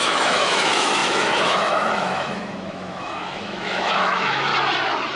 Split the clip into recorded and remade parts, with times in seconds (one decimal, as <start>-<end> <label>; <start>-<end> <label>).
0.0-4.5 remade; 4.5-5.2 recorded